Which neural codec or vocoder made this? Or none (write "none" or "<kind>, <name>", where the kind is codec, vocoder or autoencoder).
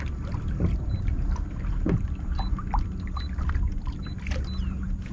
none